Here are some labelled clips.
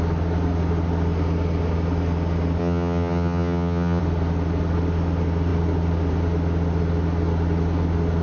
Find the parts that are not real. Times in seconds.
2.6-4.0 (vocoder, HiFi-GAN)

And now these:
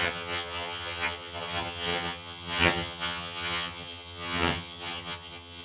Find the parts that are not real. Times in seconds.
0.0-5.6 (vocoder, HiFi-GAN)

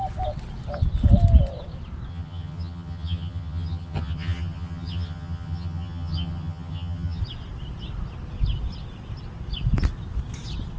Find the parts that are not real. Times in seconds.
2.1-7.2 (vocoder, HiFi-GAN)

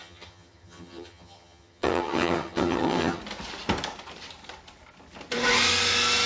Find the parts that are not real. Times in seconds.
0.0-3.2 (vocoder, HiFi-GAN)

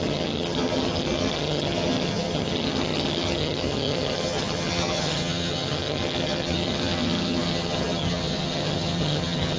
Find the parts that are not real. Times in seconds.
0.0-9.6 (vocoder, HiFi-GAN)

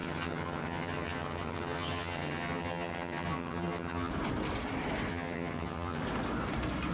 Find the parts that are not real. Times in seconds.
0.0-4.1 (vocoder, HiFi-GAN); 5.1-6.0